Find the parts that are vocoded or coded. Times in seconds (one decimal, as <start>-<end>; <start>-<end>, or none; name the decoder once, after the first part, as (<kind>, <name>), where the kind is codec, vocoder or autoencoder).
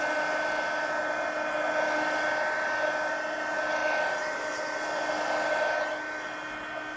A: none